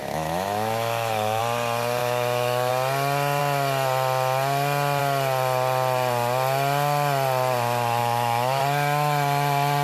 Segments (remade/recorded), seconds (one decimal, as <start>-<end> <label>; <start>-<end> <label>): 0.0-1.4 remade; 1.4-2.0 recorded; 2.0-2.7 remade; 2.7-8.0 recorded; 8.0-8.6 remade; 8.6-9.8 recorded